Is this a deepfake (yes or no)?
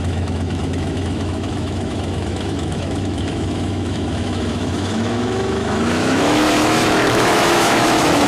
yes